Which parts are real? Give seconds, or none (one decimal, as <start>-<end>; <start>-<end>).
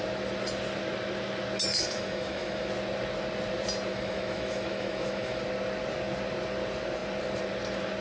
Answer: 0.0-1.7; 2.7-3.9; 5.4-8.0